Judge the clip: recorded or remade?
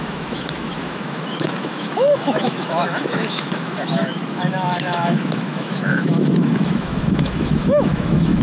remade